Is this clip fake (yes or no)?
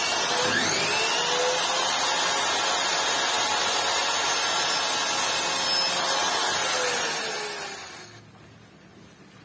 no